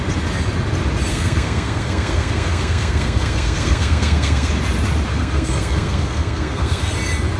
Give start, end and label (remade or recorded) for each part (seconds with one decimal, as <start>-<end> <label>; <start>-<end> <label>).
0.0-1.1 recorded; 1.1-4.5 remade; 4.5-5.1 recorded; 5.1-6.9 remade; 6.9-7.4 recorded